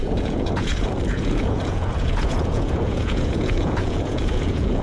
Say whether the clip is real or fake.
fake